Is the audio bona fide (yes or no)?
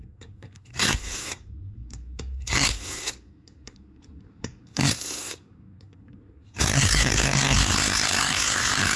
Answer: no